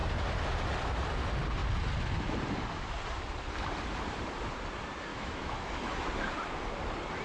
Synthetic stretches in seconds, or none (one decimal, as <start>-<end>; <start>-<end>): 5.1-6.1